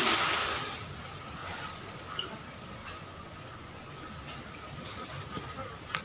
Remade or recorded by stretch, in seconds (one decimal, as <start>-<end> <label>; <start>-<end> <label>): 0.0-1.4 recorded; 1.4-2.0 remade; 2.0-2.8 recorded; 2.8-4.1 remade; 4.1-6.0 recorded